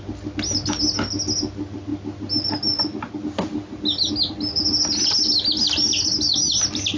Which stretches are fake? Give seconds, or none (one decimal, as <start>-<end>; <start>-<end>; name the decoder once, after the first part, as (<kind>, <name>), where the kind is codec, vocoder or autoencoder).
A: none